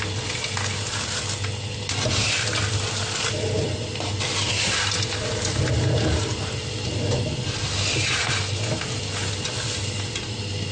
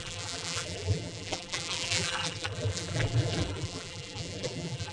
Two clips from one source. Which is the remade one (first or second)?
second